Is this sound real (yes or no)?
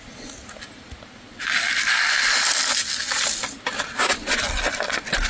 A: yes